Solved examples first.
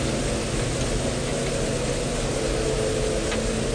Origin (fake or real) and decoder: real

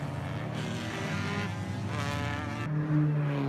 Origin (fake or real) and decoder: real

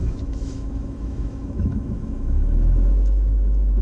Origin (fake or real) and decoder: fake, autoencoder, DAC-VAE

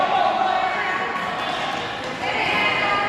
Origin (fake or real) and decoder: real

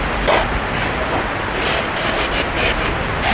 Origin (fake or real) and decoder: real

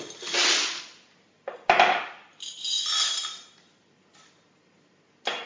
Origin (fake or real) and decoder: real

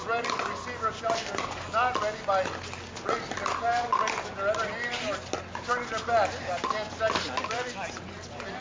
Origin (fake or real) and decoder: real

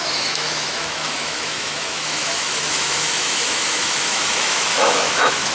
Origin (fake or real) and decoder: fake, autoencoder, DAC-VAE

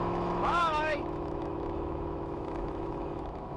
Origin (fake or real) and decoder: fake, autoencoder, DAC-VAE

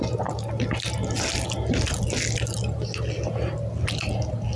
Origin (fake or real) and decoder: real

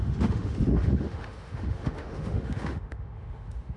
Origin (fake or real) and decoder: fake, autoencoder, DAC-VAE